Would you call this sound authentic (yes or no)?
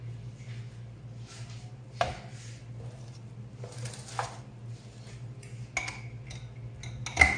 yes